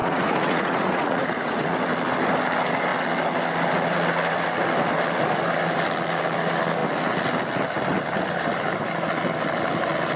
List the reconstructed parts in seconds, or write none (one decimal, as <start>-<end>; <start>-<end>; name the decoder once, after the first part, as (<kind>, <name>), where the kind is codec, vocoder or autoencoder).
0.0-1.5 (vocoder, Vocos)